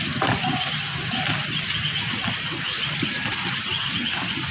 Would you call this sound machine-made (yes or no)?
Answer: no